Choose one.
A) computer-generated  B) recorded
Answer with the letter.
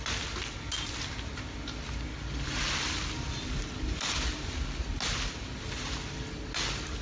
B